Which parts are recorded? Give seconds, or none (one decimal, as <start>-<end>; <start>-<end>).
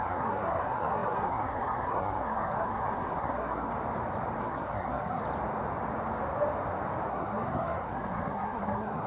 3.7-4.4; 5.2-7.1